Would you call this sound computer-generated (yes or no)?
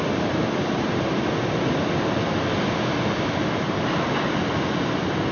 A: no